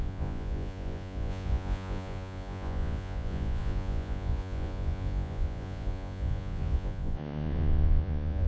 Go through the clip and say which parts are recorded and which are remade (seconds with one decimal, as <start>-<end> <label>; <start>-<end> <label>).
0.0-8.5 remade